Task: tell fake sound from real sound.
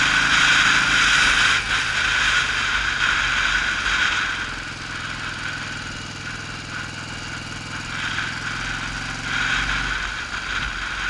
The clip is real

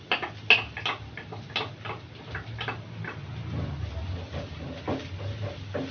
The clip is real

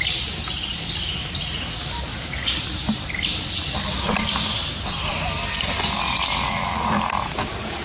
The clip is real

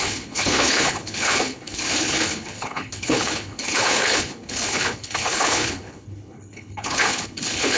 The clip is fake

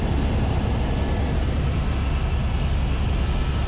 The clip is real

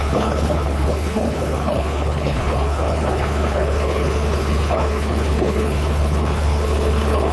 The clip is fake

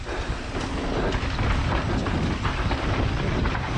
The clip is real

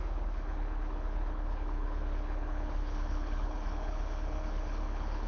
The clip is fake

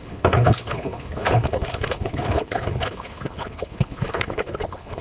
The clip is fake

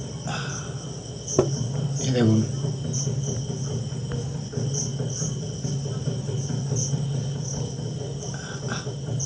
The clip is real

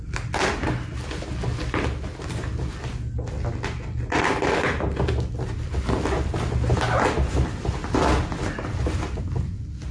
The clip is real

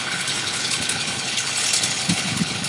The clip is fake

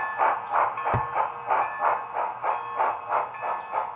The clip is real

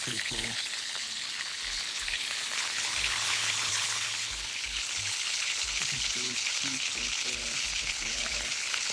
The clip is fake